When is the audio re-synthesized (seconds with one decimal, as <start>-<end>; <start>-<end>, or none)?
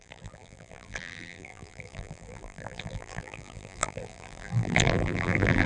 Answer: 0.0-5.7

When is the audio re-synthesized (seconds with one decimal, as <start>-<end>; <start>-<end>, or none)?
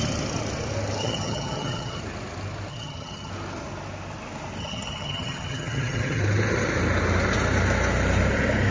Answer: 1.0-2.0; 2.7-3.3; 4.6-6.2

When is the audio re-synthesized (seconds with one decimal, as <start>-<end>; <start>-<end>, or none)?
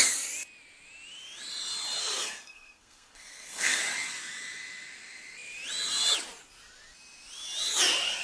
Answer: 2.0-3.8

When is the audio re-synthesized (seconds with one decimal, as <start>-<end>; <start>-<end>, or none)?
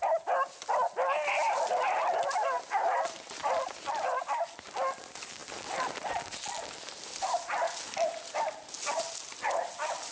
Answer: none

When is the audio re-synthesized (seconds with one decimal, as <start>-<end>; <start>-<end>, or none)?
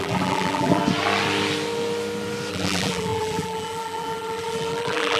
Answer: 0.0-0.8; 2.5-5.2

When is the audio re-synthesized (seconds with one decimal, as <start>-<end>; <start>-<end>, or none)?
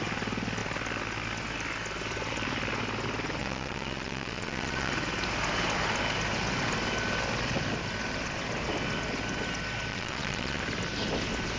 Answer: 3.4-4.9; 9.9-10.6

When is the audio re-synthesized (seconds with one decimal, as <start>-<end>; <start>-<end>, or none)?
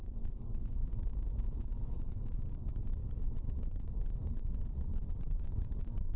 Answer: 0.0-1.1; 1.6-6.2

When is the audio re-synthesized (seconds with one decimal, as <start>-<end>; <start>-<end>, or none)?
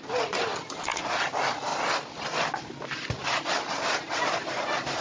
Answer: none